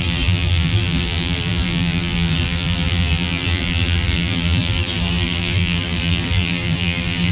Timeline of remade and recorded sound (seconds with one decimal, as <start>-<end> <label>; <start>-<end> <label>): 0.0-7.3 remade